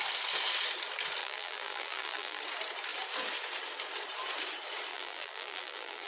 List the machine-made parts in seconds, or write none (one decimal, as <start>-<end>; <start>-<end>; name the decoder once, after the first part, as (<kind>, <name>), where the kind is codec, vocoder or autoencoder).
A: 1.2-2.4 (vocoder, BigVGAN v2); 4.9-6.1